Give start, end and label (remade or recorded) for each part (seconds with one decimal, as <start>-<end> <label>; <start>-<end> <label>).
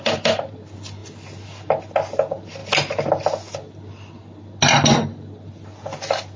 0.0-6.4 recorded